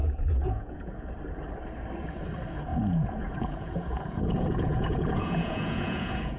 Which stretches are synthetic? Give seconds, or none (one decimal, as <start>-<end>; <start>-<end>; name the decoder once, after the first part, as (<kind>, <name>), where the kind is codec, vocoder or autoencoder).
0.0-1.1 (vocoder, Vocos); 2.7-6.4